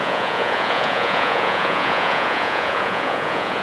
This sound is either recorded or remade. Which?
remade